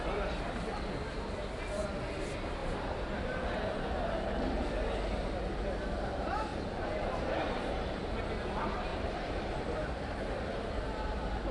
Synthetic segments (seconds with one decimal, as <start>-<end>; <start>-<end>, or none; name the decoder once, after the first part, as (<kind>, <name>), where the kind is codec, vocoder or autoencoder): 2.6-4.6 (vocoder, BigVGAN v2); 6.5-8.2; 8.9-11.5